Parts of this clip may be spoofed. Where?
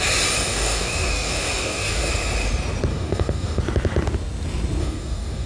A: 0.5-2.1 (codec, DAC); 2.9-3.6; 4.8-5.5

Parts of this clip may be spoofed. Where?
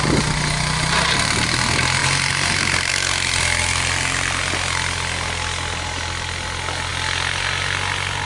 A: none